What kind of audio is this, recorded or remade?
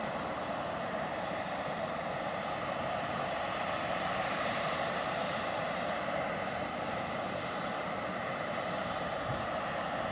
remade